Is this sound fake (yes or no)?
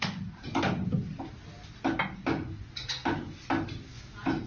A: no